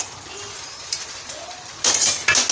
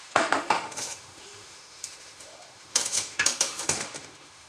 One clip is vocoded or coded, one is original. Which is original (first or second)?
first